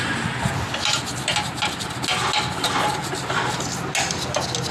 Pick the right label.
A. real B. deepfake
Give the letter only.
A